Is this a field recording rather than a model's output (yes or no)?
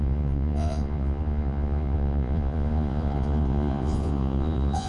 no